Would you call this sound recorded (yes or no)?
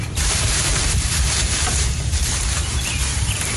no